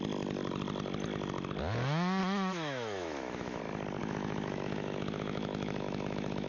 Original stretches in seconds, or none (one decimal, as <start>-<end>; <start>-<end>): 0.0-2.2; 3.6-4.0

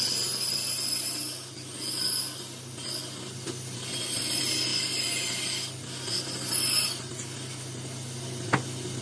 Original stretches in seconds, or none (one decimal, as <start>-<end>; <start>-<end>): 0.0-9.0

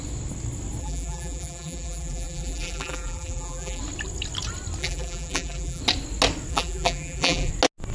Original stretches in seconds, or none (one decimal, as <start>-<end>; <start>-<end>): 0.0-0.8; 3.8-4.8; 5.8-6.5; 7.5-7.9